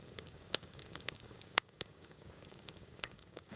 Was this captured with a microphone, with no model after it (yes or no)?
no